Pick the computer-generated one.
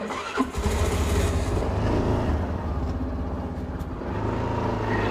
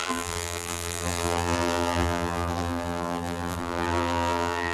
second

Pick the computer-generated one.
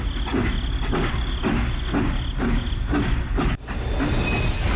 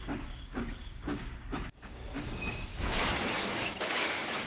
second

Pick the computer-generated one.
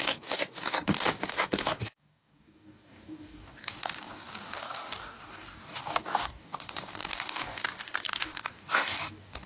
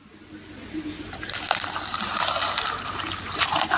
first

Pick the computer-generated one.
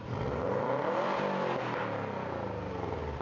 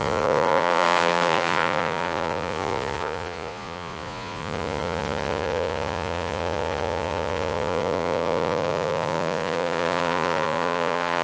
second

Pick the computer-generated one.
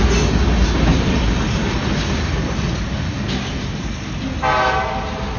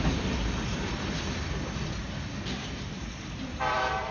second